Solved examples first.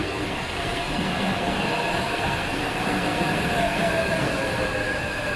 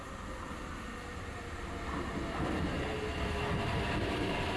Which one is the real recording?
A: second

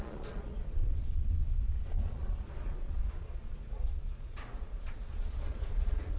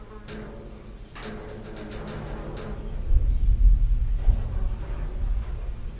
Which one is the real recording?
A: second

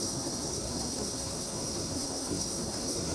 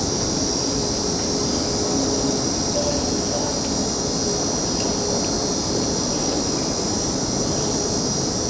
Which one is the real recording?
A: second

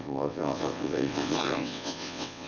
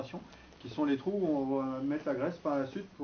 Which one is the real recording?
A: second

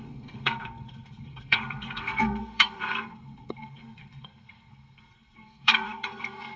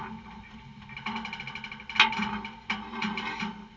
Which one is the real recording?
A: second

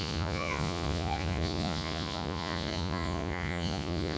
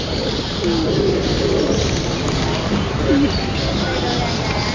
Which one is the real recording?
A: second